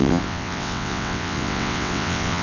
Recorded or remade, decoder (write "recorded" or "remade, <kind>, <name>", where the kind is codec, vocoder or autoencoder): remade, vocoder, WaveNeXt